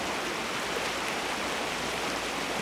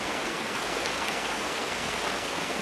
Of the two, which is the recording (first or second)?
first